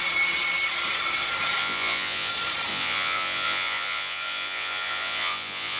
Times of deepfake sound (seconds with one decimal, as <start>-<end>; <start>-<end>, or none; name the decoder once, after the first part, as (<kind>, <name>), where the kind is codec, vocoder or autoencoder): 1.6-2.3 (vocoder, Vocos); 2.7-5.8